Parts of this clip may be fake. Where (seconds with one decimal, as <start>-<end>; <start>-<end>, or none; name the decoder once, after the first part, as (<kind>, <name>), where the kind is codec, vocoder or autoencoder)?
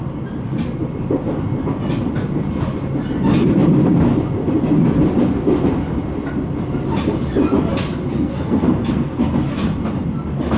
8.1-9.3 (codec, SNAC)